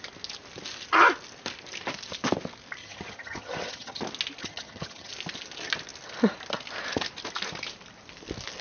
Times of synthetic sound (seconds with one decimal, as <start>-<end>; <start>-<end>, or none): 2.8-4.0; 4.4-5.1